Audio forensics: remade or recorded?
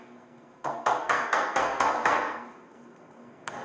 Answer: remade